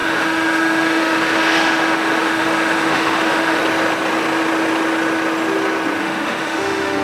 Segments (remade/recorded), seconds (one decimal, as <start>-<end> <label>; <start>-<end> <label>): 0.0-3.6 remade; 3.6-6.0 recorded; 6.0-7.0 remade